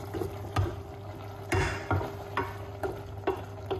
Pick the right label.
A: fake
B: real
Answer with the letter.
B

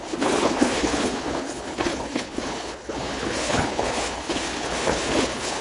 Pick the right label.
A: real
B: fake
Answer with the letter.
B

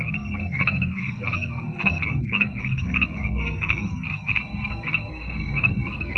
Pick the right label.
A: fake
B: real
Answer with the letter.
A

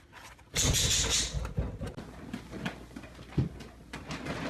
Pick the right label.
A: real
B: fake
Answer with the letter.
A